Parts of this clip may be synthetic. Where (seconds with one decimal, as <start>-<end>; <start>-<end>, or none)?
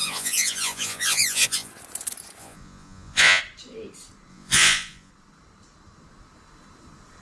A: 0.0-1.7; 2.4-3.4; 4.3-5.1